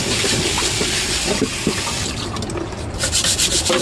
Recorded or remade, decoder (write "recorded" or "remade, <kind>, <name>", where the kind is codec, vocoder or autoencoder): recorded